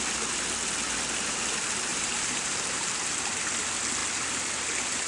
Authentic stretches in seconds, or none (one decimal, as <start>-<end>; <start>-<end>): 0.0-1.9; 2.9-5.1

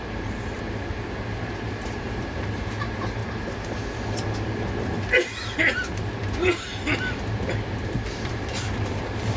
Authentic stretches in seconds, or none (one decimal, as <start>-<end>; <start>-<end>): 3.2-7.2

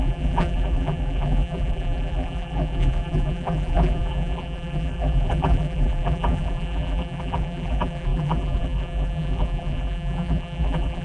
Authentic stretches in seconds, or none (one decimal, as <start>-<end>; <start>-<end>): none

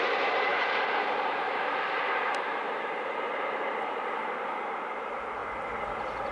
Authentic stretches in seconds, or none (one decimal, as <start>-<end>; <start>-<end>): 5.4-6.3

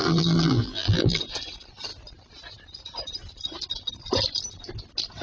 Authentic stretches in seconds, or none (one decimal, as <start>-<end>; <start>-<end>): 1.2-5.2

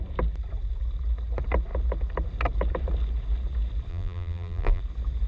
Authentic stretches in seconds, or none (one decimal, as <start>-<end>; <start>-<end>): 0.0-3.9; 4.8-5.3

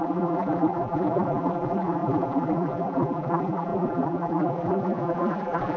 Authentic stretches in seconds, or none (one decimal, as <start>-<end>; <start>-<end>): none

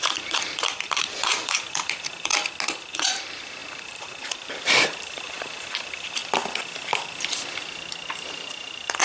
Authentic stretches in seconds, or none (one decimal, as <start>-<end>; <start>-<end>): 2.3-2.9; 6.2-8.3